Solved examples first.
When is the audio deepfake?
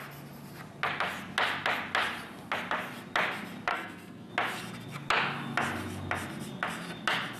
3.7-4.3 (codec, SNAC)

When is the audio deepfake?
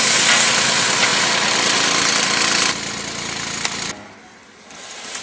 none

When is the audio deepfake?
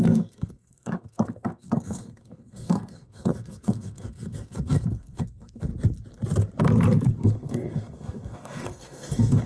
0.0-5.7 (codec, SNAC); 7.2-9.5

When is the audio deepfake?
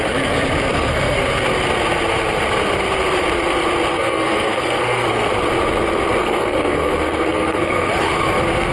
0.7-1.2 (codec, SNAC); 3.9-5.3; 6.2-7.9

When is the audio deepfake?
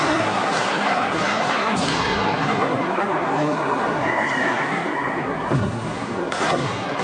0.0-7.0 (codec, SNAC)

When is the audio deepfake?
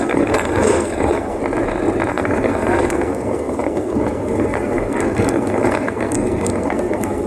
0.0-1.4 (codec, SNAC); 2.1-7.3